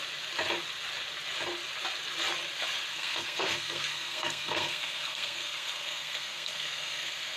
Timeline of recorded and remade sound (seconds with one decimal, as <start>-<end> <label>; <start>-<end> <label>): 0.0-2.9 recorded; 2.9-7.4 remade